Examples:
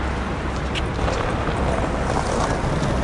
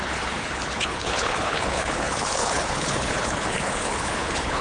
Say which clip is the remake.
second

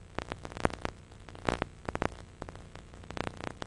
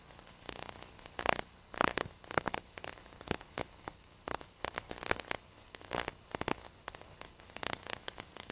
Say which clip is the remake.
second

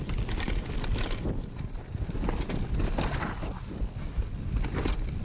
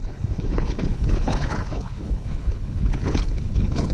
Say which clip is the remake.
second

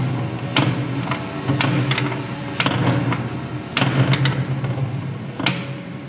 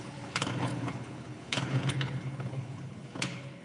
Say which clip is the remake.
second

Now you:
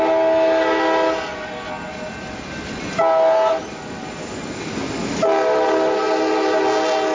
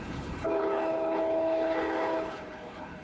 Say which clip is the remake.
second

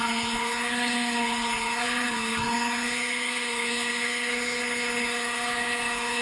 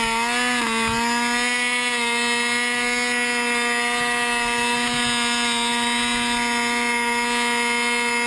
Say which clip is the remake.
first